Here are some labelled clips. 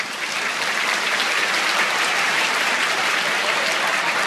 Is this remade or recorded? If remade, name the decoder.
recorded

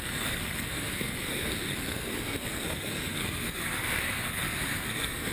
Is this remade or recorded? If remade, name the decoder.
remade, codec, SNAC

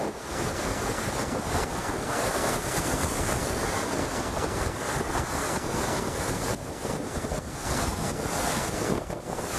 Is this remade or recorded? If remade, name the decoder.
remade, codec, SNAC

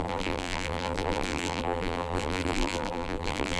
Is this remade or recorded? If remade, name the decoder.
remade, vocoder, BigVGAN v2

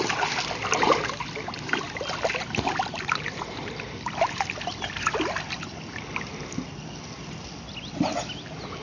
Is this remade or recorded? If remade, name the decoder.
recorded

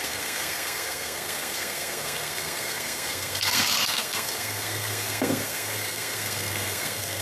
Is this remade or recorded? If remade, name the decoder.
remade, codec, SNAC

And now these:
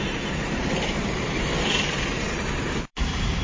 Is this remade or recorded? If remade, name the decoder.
remade, vocoder, BigVGAN v2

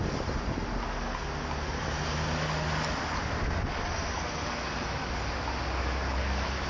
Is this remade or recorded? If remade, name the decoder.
recorded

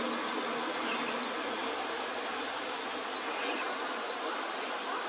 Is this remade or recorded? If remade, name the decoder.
recorded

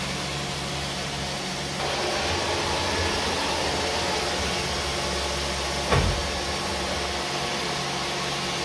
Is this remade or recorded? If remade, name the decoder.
recorded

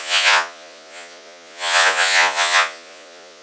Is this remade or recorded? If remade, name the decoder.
remade, vocoder, Vocos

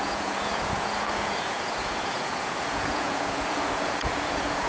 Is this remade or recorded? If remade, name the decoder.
remade, vocoder, Vocos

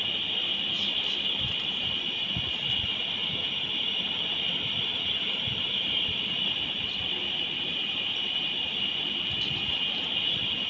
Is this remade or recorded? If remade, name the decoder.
recorded